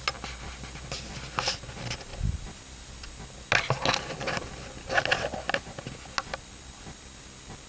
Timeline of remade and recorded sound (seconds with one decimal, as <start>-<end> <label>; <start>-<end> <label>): 0.0-7.7 recorded